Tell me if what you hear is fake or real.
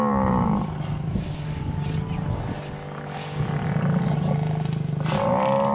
real